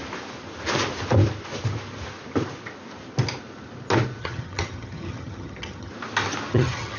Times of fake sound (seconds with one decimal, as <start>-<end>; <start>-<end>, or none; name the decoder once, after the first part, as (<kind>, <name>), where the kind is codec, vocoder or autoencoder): 4.2-5.9 (vocoder, HiFi-GAN); 6.5-7.0